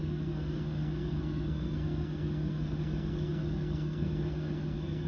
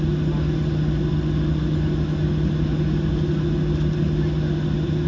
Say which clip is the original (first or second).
second